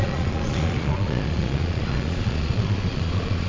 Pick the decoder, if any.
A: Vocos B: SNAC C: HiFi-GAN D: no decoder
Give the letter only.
A